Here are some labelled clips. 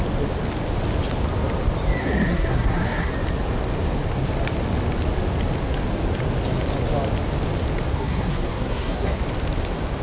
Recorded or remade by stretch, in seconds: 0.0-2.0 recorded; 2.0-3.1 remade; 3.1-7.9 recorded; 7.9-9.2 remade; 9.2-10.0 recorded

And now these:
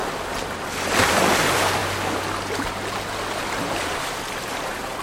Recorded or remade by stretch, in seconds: 0.0-5.0 recorded

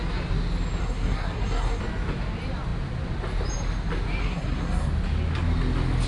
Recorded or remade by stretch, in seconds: 0.0-0.8 recorded; 0.8-1.8 remade; 1.8-4.2 recorded; 4.2-4.9 remade; 4.9-6.1 recorded

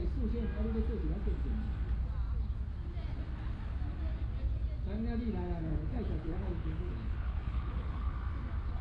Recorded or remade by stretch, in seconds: 0.0-5.6 recorded; 5.6-8.1 remade; 8.1-8.8 recorded